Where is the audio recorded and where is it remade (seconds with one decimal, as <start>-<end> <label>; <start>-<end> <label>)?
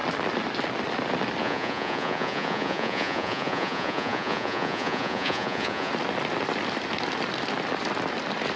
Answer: 0.0-1.4 recorded; 1.4-5.9 remade; 5.9-8.6 recorded